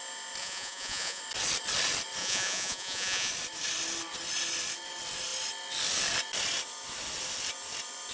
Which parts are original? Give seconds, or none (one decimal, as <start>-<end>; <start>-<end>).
0.0-0.4; 1.2-2.2; 3.3-8.1